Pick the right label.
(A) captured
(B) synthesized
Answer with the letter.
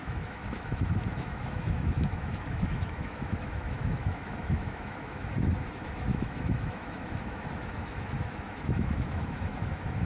B